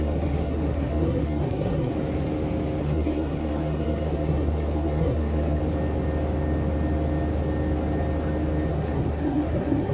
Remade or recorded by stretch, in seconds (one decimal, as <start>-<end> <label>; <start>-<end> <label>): 0.0-1.9 remade; 1.9-2.8 recorded; 2.8-5.6 remade; 5.6-8.7 recorded; 8.7-9.9 remade